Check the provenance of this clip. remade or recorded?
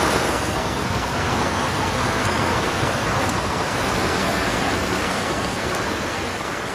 remade